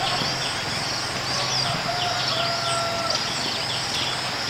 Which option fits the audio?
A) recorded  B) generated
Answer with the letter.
A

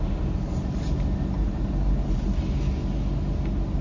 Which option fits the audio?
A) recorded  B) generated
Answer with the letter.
A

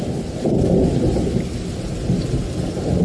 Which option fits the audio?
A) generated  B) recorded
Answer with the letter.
B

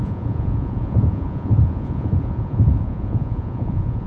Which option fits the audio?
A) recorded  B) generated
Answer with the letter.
B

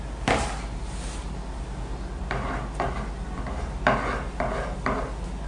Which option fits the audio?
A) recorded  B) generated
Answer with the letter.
A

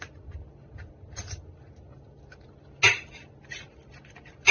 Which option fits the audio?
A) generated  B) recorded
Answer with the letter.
B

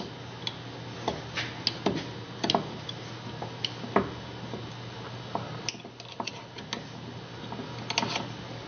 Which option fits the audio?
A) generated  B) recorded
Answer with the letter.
B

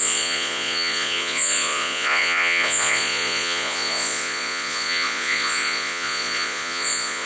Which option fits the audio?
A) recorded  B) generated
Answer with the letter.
B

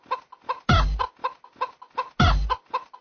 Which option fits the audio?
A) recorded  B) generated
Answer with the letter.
A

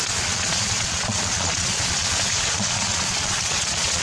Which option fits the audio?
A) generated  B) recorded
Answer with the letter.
A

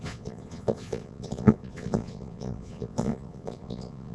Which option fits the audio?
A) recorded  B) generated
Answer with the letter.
B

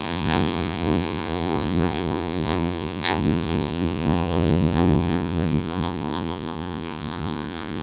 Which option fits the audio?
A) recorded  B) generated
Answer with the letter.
B